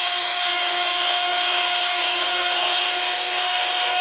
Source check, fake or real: fake